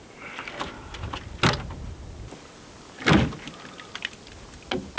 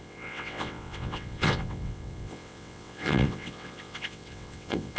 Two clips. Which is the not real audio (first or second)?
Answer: second